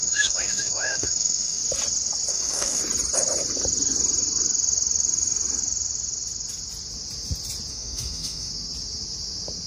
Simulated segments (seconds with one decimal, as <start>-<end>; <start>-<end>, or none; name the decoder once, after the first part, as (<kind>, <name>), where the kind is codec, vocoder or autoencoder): 0.0-1.6 (autoencoder, DAC-VAE); 2.3-2.8; 7.7-8.5